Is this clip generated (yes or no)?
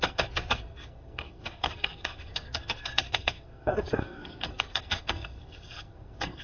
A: yes